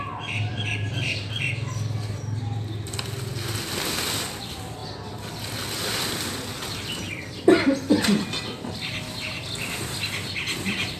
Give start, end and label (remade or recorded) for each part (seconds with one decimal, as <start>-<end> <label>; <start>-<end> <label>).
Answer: 0.0-0.5 recorded; 0.5-1.5 remade; 1.5-11.0 recorded